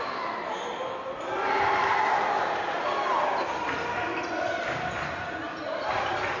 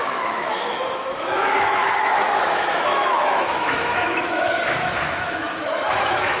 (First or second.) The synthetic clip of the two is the second